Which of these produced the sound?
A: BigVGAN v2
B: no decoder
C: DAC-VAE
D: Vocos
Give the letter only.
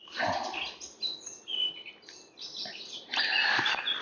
B